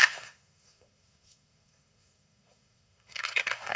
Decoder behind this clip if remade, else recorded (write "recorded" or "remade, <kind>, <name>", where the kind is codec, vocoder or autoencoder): remade, codec, SNAC